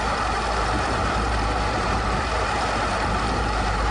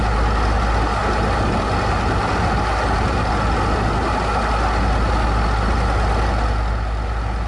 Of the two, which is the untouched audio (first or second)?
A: second